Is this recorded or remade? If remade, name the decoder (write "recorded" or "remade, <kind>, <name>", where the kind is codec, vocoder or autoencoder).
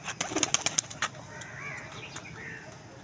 recorded